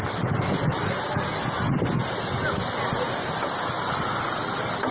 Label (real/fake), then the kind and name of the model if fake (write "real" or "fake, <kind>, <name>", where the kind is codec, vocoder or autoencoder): real